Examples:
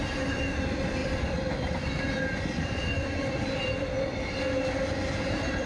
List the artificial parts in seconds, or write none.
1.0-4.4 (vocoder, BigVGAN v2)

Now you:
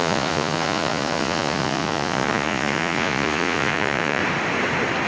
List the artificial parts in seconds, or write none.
0.0-4.2 (vocoder, Vocos)

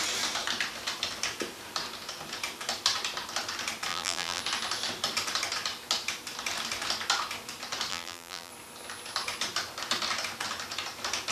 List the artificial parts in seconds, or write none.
3.9-4.4 (vocoder, BigVGAN v2); 7.9-8.5